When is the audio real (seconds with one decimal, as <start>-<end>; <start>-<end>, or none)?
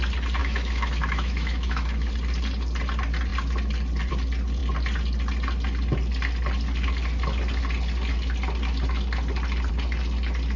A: 0.0-0.4; 2.1-10.6